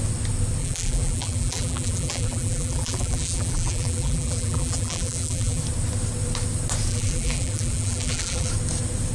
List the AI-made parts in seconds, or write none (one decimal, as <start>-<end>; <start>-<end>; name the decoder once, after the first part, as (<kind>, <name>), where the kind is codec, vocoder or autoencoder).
0.6-5.6 (vocoder, BigVGAN v2); 6.9-8.5